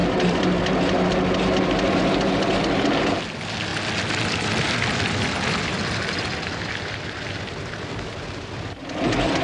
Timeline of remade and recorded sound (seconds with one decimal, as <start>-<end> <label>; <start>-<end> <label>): 0.0-9.4 recorded